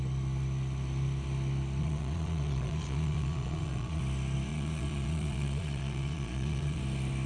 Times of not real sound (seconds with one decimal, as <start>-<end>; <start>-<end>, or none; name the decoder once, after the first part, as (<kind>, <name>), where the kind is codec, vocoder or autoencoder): 1.8-4.0 (vocoder, Vocos); 4.5-6.8